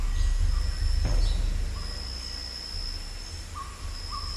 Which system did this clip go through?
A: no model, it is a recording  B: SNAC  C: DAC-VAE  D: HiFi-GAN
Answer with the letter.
A